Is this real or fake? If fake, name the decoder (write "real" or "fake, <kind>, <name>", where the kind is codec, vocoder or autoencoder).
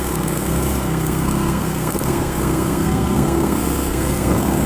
fake, codec, SNAC